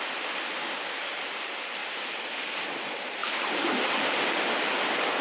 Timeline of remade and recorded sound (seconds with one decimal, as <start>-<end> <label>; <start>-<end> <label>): 0.0-1.8 recorded; 1.8-2.6 remade; 2.6-3.2 recorded; 3.2-4.5 remade; 4.5-5.2 recorded